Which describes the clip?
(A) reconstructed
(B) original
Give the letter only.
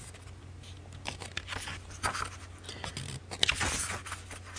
B